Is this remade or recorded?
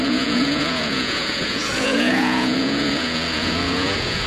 remade